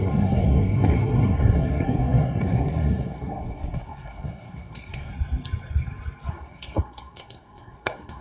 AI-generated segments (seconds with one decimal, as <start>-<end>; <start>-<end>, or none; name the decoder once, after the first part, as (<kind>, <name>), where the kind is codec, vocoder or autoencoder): 0.0-5.1 (codec, SNAC); 6.3-8.2